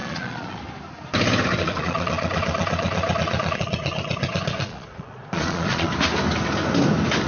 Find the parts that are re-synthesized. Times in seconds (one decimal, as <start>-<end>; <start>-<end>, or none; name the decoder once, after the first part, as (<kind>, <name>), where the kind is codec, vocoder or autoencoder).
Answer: 0.0-0.6 (vocoder, Vocos); 1.6-5.9